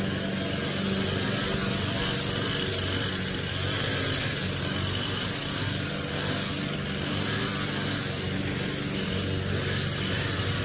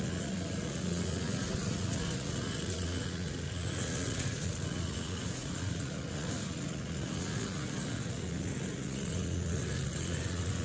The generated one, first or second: second